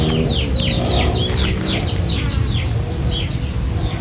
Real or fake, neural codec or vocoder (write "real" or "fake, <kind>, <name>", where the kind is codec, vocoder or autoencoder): real